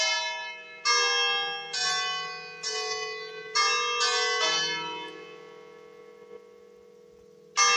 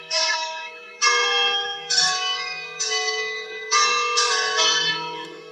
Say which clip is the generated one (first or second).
second